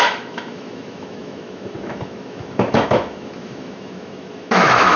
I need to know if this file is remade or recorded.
remade